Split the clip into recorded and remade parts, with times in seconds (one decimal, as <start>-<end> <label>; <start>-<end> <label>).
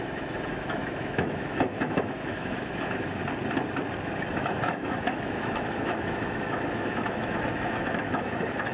0.0-3.2 remade; 3.2-4.4 recorded; 4.4-8.7 remade